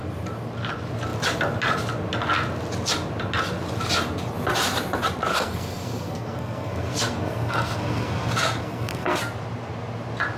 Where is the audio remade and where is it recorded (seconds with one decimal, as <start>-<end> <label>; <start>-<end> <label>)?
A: 0.0-5.3 recorded; 5.3-9.2 remade; 9.2-10.4 recorded

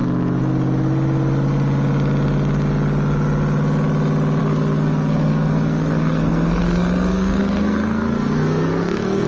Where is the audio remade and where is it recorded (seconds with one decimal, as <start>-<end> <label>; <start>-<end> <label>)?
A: 0.0-4.4 recorded; 4.4-9.3 remade

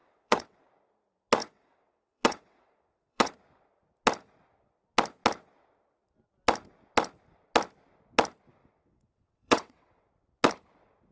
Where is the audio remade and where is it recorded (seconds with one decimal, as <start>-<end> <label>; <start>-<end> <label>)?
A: 0.0-0.6 remade; 0.6-1.4 recorded; 1.4-3.3 remade; 3.3-8.6 recorded; 8.6-10.1 remade; 10.1-11.1 recorded

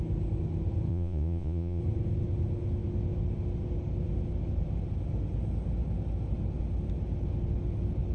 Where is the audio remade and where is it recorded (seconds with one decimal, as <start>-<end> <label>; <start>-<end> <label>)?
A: 0.0-0.9 recorded; 0.9-1.8 remade; 1.8-8.1 recorded

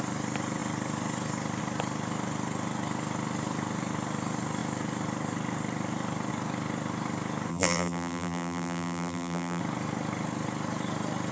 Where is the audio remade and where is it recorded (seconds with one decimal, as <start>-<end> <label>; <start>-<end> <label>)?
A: 0.0-7.5 recorded; 7.5-9.6 remade; 9.6-11.3 recorded

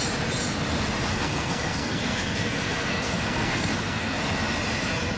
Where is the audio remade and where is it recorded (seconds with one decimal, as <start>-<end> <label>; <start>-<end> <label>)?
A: 0.0-1.1 recorded; 1.1-4.2 remade; 4.2-5.2 recorded